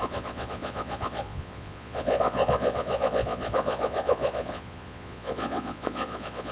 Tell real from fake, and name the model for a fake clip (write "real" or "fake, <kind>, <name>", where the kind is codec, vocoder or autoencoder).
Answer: fake, vocoder, Vocos